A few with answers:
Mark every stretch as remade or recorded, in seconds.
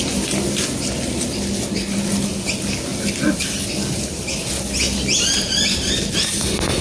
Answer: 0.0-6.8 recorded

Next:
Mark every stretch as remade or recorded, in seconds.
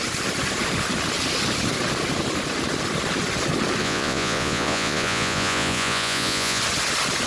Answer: 0.0-3.8 recorded; 3.8-6.6 remade; 6.6-7.3 recorded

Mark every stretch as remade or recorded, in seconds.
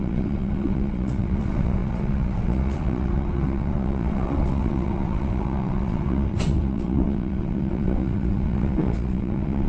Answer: 0.0-9.7 remade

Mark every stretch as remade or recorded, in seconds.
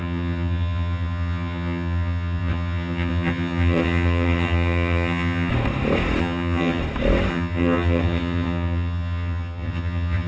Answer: 0.0-5.5 remade; 5.5-6.2 recorded; 6.2-6.8 remade; 6.8-7.3 recorded; 7.3-10.3 remade